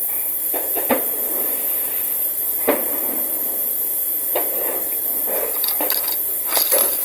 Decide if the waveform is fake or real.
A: real